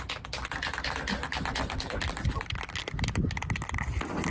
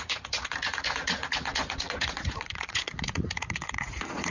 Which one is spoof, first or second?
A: second